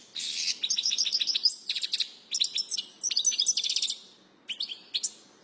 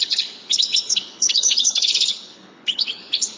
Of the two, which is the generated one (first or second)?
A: second